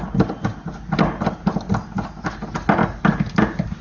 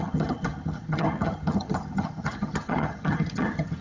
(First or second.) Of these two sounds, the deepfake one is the second